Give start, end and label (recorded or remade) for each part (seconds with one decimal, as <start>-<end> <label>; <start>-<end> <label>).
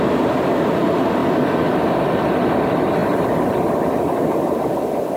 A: 0.0-5.2 recorded